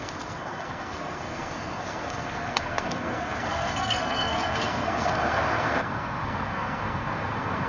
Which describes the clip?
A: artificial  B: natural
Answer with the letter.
A